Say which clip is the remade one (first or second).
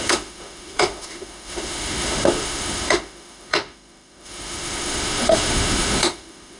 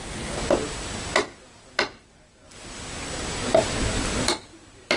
first